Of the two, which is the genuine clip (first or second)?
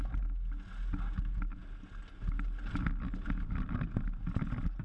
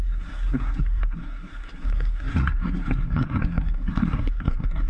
first